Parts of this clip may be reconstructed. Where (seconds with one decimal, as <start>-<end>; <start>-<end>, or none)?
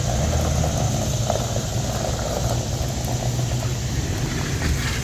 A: none